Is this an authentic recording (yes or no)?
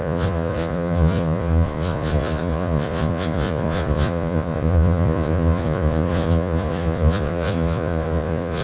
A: no